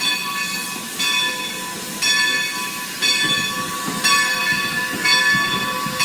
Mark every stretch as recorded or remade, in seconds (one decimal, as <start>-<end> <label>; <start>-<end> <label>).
0.0-6.0 recorded